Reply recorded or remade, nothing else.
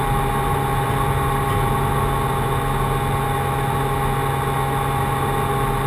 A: recorded